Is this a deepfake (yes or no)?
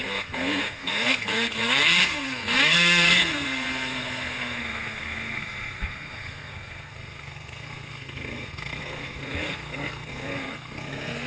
yes